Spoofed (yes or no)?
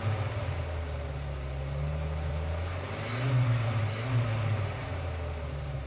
no